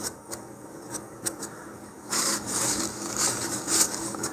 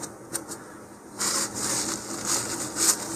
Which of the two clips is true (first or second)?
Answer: second